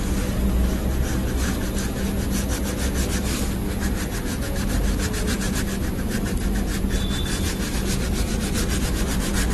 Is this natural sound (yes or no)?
yes